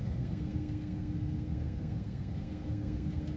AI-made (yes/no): yes